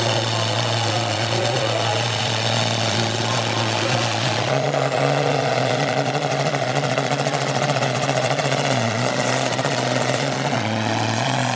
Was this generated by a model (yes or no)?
yes